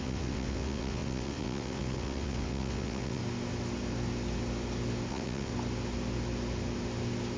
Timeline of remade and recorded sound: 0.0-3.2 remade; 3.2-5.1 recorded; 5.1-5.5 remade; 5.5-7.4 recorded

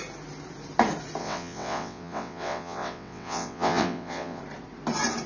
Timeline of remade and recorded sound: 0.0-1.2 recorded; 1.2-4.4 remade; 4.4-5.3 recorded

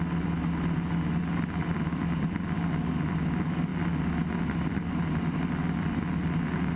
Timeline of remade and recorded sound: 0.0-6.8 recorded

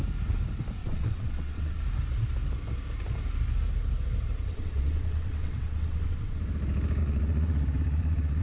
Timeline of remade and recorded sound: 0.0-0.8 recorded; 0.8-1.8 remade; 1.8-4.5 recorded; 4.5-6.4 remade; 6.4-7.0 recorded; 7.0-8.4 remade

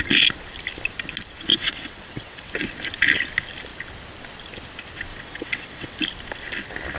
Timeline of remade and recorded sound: 0.0-1.5 recorded; 1.5-2.5 remade; 2.5-5.1 recorded; 5.1-6.0 remade; 6.0-7.0 recorded